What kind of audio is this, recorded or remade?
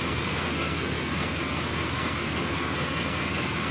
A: remade